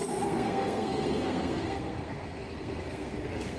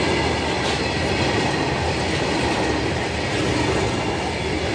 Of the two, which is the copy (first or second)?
first